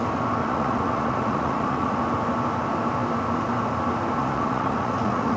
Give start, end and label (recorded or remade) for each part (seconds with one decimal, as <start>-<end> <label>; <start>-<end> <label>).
0.0-0.4 recorded; 0.4-2.0 remade; 2.0-4.2 recorded; 4.2-5.4 remade